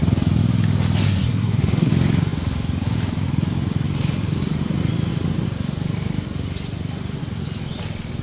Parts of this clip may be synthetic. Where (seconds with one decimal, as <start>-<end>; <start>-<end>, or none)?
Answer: 1.0-1.9